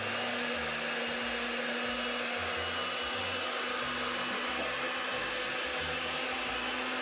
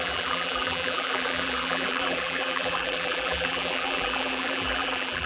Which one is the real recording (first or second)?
first